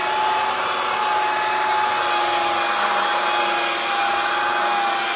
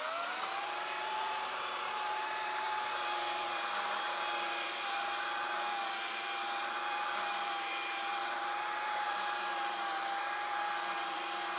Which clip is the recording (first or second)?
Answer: first